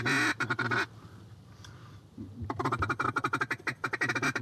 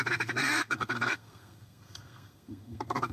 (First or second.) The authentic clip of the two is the first